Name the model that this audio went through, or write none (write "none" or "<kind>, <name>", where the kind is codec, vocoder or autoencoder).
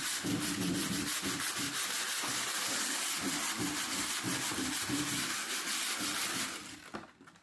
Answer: none